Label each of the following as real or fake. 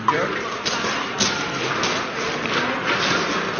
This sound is real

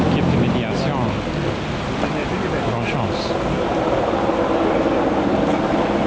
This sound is real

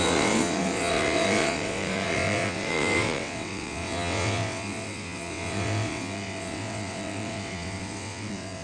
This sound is fake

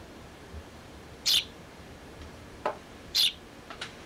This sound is fake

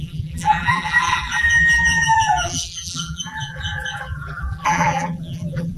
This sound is fake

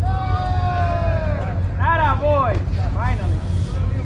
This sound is real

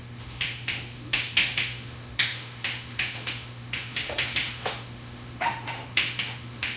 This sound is fake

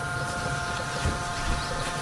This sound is fake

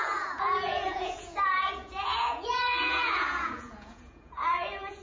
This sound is fake